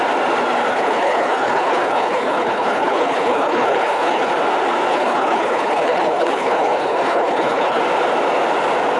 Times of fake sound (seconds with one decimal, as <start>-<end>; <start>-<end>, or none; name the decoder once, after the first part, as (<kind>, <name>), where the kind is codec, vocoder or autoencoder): 0.7-4.3 (codec, HILCodec); 4.9-7.8